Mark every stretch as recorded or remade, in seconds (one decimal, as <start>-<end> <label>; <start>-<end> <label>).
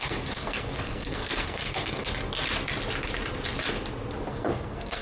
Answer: 0.0-2.0 remade; 2.0-4.3 recorded; 4.3-5.0 remade